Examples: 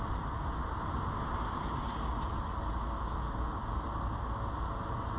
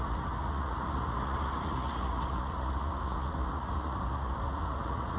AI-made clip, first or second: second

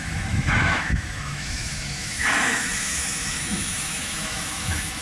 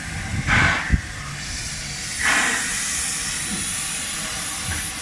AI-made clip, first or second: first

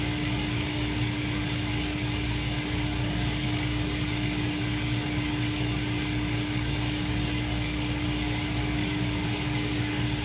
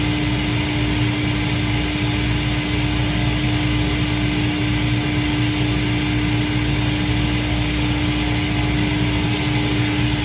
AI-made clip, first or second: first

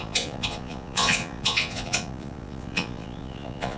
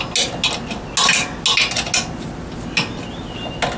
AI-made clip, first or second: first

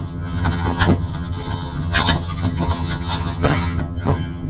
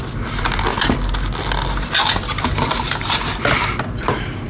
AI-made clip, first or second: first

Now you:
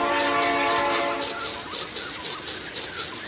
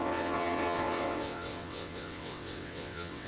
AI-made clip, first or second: second